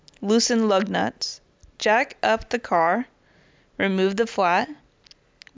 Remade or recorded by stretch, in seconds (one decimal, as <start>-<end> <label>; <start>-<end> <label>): 0.0-5.6 recorded